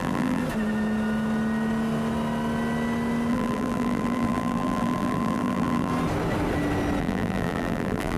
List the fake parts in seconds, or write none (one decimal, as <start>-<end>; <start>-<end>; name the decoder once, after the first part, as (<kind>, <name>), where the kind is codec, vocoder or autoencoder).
0.0-0.4 (vocoder, BigVGAN v2); 3.3-5.9; 7.0-8.2